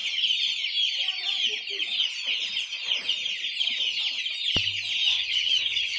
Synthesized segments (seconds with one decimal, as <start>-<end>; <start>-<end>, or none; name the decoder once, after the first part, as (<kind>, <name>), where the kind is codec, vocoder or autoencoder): 5.1-6.0 (vocoder, HiFi-GAN)

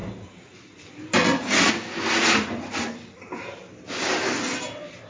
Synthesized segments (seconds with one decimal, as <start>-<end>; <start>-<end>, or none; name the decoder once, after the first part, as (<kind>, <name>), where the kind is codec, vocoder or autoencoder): none